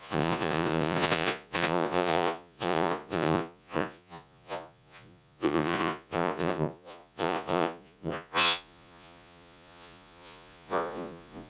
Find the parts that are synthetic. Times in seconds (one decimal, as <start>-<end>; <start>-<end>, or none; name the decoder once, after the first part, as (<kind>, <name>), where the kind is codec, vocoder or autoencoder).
0.0-11.5 (vocoder, Vocos)